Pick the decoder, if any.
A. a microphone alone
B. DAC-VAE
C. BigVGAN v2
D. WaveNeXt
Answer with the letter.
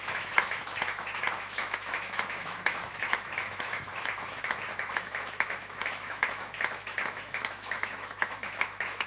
B